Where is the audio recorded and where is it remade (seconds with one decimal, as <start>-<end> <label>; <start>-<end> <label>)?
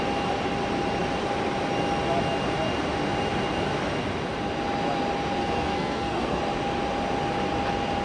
0.0-5.4 recorded; 5.4-6.4 remade; 6.4-8.0 recorded